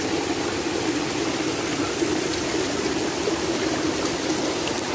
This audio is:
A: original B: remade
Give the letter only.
A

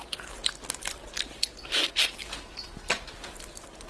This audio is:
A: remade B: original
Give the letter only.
B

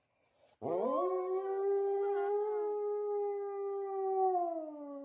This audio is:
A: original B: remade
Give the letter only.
A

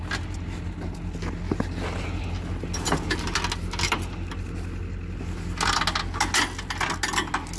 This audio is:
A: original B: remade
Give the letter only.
A